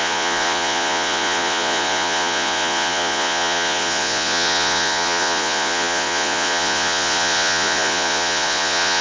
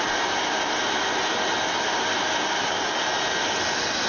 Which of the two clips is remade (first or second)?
first